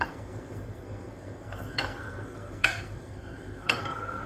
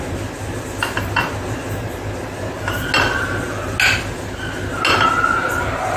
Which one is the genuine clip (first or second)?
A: second